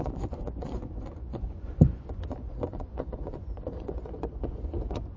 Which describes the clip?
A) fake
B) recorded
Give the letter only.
A